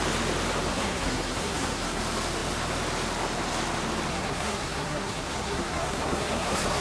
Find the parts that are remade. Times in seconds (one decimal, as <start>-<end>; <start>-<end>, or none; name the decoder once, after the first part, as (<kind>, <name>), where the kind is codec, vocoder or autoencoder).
0.7-2.0 (codec, SNAC); 4.1-6.8